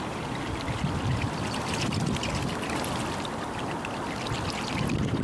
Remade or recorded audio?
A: recorded